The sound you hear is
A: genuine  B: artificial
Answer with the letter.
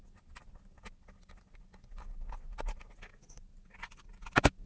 A